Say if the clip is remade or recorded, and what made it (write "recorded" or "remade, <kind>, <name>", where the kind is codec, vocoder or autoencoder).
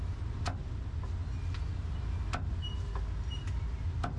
recorded